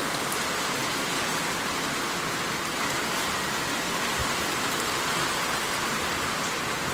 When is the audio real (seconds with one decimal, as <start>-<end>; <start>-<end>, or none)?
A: 0.0-6.9